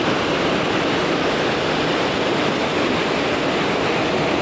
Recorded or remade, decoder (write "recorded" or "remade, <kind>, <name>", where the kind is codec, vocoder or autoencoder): recorded